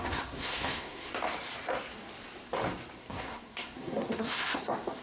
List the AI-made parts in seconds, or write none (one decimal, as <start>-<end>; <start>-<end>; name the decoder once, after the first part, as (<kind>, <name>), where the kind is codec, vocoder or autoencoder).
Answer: 0.0-1.1 (codec, SNAC); 3.0-5.0